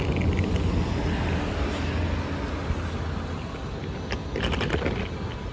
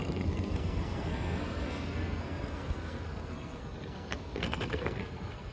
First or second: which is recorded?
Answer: first